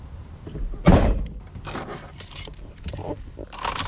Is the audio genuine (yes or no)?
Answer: no